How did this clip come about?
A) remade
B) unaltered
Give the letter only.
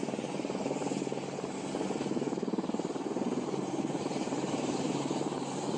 B